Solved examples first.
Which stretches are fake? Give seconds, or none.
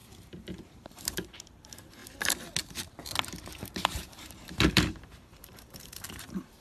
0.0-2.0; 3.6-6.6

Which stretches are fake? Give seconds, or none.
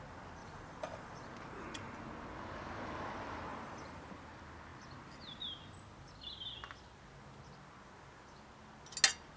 0.4-1.3; 3.5-4.1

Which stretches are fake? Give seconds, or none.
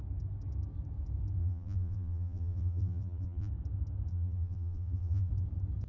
1.4-3.5; 4.1-5.3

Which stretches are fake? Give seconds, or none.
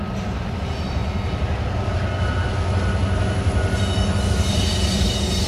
0.0-1.0; 4.3-5.5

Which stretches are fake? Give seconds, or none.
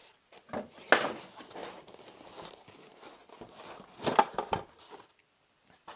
1.6-4.8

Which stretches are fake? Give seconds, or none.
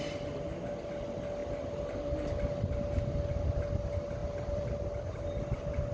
4.2-4.7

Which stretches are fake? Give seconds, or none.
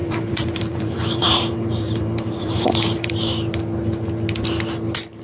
0.0-3.1